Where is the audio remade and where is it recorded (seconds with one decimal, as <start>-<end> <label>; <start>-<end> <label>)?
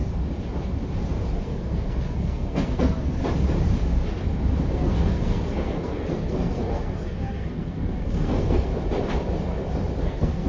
0.0-1.4 recorded; 1.4-3.2 remade; 3.2-4.7 recorded; 4.7-8.7 remade; 8.7-10.0 recorded; 10.0-10.5 remade